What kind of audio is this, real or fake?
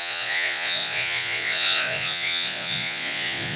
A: fake